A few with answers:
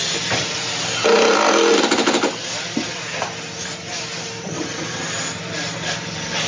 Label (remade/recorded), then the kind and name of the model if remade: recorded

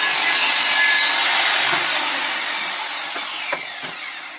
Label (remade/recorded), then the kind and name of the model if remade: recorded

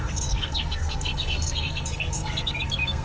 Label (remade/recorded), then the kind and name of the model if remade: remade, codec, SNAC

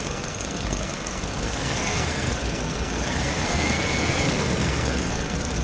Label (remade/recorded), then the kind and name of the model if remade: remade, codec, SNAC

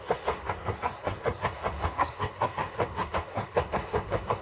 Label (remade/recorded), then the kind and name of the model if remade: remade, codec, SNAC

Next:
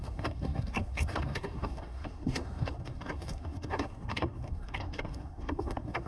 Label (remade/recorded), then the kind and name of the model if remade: remade, codec, SNAC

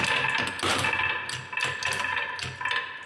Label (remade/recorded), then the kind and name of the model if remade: recorded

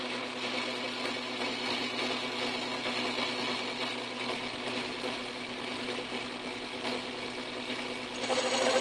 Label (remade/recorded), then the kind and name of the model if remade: recorded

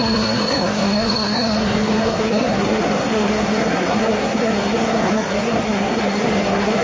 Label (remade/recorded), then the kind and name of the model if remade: remade, codec, SNAC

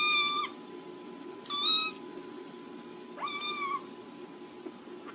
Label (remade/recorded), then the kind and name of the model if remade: recorded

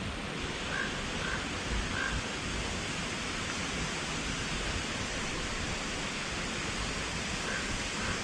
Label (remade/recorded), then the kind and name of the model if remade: recorded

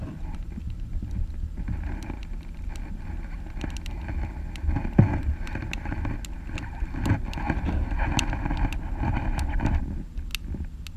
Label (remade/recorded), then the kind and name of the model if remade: recorded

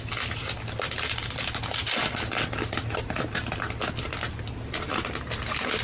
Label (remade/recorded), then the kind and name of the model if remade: recorded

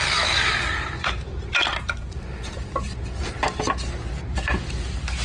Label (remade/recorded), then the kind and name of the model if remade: recorded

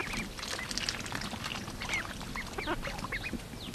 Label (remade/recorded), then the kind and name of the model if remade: recorded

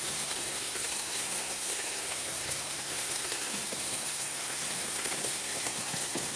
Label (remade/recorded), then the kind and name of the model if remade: remade, codec, SNAC